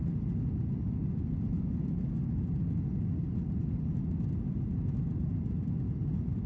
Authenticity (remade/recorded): recorded